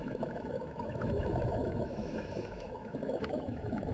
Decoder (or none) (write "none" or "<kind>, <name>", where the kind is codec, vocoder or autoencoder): autoencoder, DAC-VAE